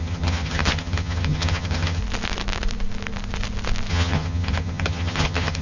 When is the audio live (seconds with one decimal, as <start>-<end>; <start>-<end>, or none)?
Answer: 2.0-3.9